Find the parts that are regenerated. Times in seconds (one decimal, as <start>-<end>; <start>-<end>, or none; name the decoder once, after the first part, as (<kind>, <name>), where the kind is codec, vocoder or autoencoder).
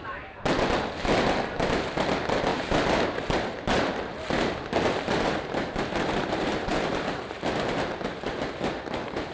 2.5-7.4 (vocoder, BigVGAN v2)